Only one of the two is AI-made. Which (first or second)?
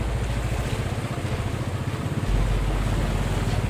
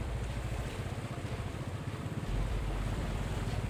second